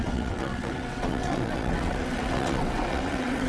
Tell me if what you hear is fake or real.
fake